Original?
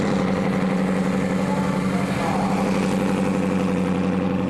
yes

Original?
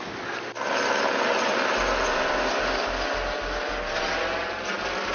yes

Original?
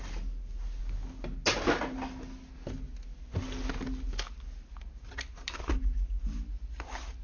yes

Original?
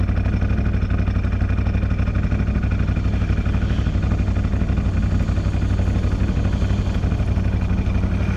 yes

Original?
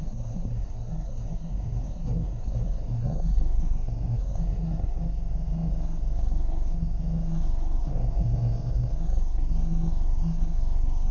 no